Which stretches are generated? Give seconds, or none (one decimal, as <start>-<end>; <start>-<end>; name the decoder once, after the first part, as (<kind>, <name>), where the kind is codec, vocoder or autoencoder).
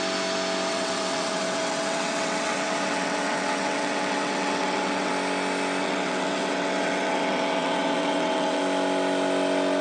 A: 0.7-5.1 (vocoder, WaveNeXt); 5.8-8.6